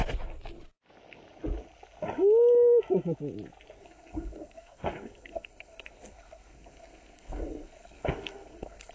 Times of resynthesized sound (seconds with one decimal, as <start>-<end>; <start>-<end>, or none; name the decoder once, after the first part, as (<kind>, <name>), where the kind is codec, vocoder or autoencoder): 3.8-8.9 (codec, SNAC)

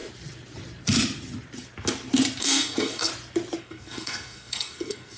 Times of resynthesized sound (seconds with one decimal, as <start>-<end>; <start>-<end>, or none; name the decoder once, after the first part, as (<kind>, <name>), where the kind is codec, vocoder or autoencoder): 2.4-3.1 (codec, SNAC); 3.6-5.2

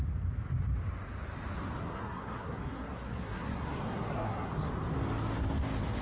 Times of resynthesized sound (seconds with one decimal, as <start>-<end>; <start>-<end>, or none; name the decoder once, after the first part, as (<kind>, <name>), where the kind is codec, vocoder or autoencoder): 1.8-4.7 (codec, SNAC)

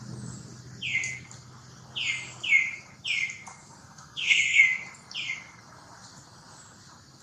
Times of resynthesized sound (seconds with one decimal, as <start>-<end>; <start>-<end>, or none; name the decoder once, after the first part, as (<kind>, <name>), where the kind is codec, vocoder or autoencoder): 3.8-4.6 (codec, SNAC)

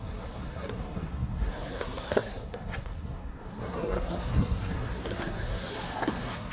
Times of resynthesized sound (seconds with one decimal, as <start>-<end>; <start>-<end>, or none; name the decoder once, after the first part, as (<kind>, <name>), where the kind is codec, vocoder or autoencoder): 0.0-6.5 (codec, SNAC)

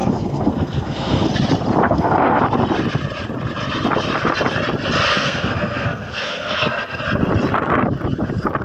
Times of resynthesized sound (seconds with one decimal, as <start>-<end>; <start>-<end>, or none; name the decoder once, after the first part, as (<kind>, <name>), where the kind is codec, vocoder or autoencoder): 0.0-1.3 (codec, SNAC); 1.8-2.4; 5.1-7.0

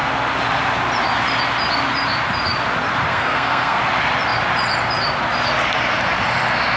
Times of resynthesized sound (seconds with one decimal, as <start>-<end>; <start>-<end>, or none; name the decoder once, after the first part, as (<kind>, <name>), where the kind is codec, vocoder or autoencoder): 3.1-3.8 (codec, SNAC)

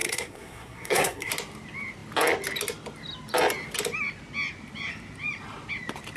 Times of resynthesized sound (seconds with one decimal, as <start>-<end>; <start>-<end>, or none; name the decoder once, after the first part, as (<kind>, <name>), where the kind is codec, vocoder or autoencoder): 0.0-1.3 (codec, SNAC)